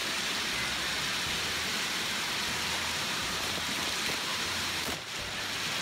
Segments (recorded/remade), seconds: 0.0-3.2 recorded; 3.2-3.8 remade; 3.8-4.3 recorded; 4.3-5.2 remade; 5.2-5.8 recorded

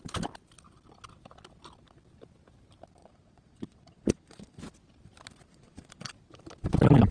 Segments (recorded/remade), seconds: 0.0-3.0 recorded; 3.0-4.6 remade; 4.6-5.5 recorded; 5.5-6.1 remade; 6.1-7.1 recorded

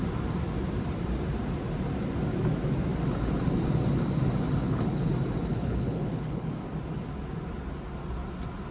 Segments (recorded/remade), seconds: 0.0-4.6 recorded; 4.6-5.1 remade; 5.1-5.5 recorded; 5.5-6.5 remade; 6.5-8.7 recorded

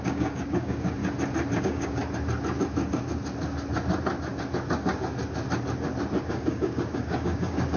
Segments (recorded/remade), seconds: 0.0-1.0 remade; 1.0-1.6 recorded; 1.6-2.0 remade; 2.0-6.2 recorded; 6.2-7.8 remade